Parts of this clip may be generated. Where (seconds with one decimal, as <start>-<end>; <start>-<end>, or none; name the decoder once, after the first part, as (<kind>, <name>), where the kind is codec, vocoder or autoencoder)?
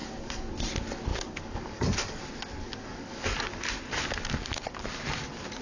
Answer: 0.0-0.5 (codec, DAC); 1.1-2.2; 2.6-3.6